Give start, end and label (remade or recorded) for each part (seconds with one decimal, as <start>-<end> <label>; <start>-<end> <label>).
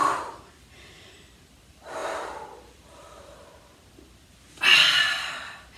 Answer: 0.0-0.6 recorded; 0.6-5.8 remade